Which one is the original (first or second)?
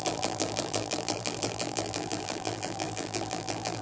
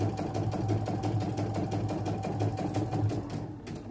second